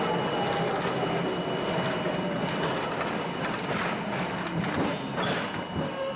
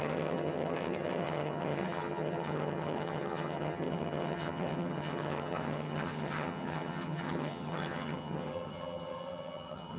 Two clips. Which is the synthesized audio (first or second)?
second